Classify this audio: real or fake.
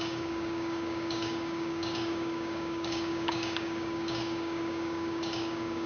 fake